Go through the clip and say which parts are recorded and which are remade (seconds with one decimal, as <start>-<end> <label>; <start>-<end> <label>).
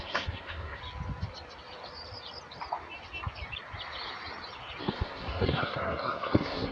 0.0-0.8 remade; 0.8-4.8 recorded; 4.8-6.7 remade